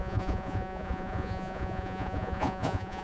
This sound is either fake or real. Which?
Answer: fake